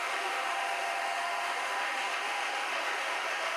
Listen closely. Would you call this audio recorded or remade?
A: remade